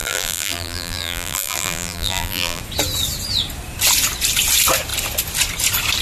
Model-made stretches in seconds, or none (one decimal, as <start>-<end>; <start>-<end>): 0.0-2.6